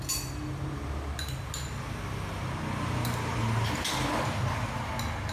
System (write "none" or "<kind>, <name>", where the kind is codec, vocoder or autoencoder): none